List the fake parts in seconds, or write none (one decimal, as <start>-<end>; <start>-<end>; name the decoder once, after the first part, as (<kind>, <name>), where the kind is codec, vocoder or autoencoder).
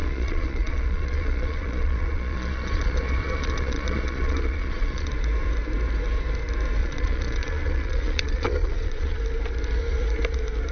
0.0-5.1 (vocoder, Vocos); 6.8-9.2